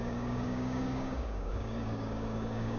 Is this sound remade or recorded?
remade